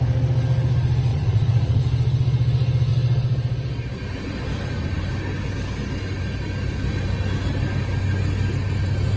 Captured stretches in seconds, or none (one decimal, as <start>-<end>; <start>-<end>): 0.0-1.1; 1.8-9.2